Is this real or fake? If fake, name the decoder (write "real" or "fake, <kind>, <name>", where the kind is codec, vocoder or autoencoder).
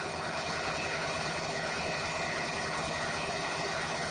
fake, codec, HILCodec